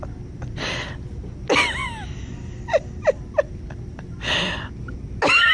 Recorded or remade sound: recorded